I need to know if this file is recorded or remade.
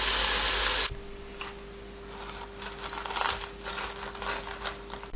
recorded